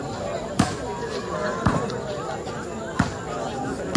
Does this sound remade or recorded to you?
recorded